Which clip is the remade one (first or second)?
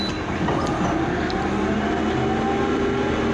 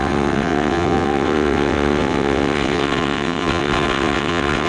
second